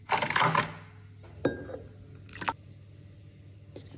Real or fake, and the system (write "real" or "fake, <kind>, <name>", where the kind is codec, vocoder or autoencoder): real